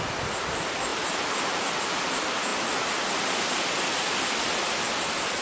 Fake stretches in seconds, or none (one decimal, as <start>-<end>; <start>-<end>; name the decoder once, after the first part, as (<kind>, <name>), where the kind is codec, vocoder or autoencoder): none